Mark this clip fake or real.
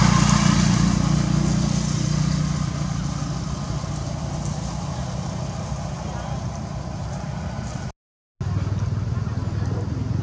real